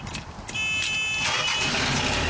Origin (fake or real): real